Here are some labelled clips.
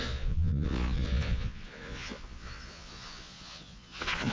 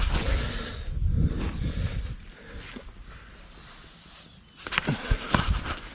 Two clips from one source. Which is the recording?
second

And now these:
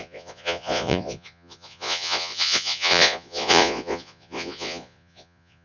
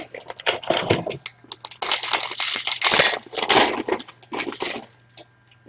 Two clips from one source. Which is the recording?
second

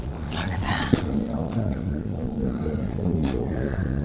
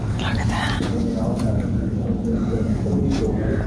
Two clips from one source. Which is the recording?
second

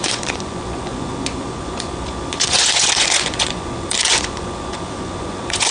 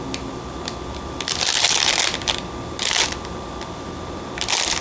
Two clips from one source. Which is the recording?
second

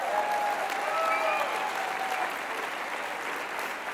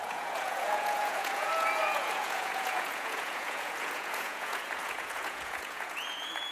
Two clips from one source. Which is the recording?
first